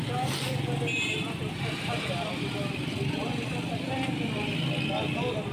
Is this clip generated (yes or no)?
no